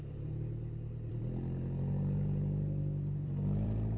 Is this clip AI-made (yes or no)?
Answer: yes